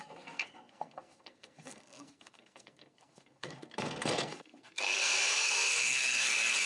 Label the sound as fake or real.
fake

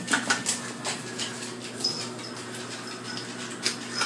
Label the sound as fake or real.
real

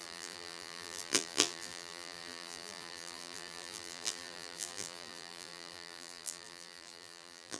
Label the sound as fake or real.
fake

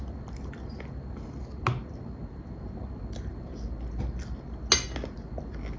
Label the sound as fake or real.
real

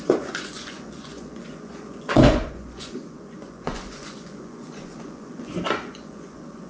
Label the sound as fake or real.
fake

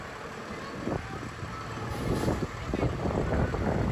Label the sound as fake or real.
real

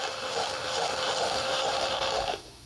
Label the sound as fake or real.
fake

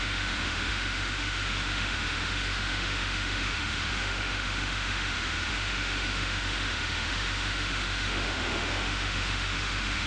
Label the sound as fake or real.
fake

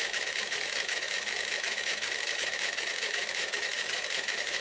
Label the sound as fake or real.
fake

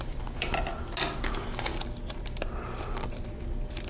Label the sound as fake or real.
real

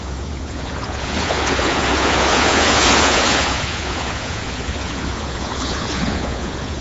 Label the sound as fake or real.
fake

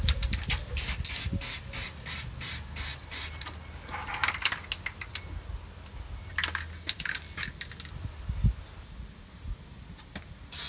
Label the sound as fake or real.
real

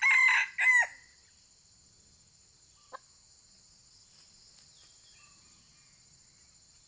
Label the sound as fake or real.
real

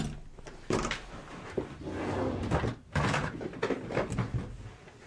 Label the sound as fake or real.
real